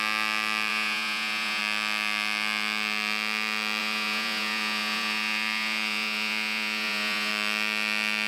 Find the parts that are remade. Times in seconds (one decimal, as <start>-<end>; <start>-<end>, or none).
0.7-1.6; 3.8-7.3